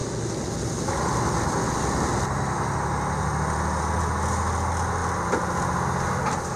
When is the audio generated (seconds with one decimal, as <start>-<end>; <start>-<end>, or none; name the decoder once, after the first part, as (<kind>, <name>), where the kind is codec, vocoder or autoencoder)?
none